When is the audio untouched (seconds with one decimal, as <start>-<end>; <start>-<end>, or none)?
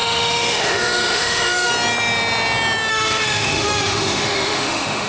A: 1.7-2.9